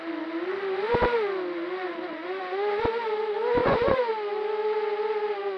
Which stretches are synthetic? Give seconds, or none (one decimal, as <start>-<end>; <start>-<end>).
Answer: 2.2-2.8; 3.6-4.1